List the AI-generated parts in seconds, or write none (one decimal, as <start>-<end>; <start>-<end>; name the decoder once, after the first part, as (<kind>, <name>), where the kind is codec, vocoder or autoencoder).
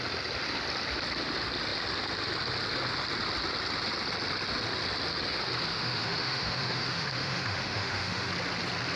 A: 5.7-8.3 (autoencoder, DAC-VAE)